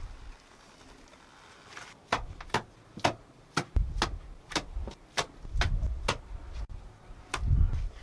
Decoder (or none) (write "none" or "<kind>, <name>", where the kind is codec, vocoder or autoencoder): none